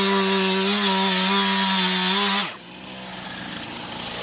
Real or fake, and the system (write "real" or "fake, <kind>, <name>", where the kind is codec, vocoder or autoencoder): real